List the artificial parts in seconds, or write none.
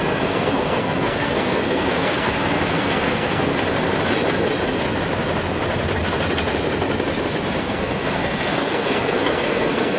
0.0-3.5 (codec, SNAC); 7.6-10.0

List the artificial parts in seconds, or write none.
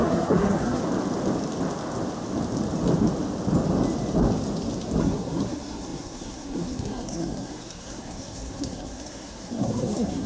0.0-0.8 (codec, SNAC); 5.0-10.3